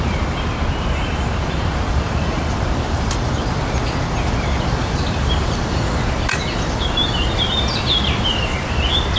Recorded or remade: remade